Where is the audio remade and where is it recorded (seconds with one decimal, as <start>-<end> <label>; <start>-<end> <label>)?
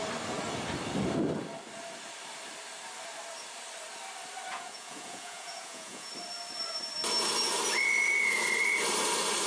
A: 0.0-4.5 recorded; 4.5-6.1 remade; 6.1-9.5 recorded